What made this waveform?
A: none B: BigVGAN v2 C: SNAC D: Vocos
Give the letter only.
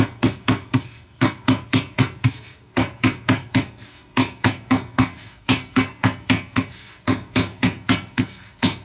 C